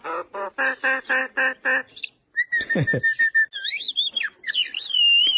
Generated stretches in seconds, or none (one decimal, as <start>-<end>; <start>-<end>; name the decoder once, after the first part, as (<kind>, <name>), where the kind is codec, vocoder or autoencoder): none